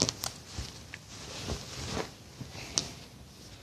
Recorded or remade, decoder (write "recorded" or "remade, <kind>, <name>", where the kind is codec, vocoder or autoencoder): recorded